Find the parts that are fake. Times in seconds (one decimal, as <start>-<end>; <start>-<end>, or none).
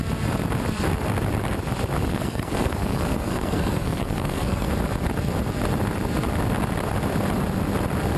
2.1-4.7